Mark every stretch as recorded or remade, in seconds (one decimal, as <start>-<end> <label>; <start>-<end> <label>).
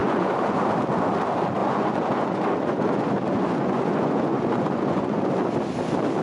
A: 0.0-0.6 remade; 0.6-1.6 recorded; 1.6-5.3 remade; 5.3-6.2 recorded